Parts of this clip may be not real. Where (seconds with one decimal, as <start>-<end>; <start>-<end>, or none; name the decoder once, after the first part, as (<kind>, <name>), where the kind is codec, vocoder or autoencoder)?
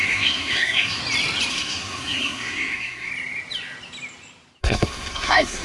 0.0-1.0 (codec, SNAC); 1.5-3.1; 4.6-5.6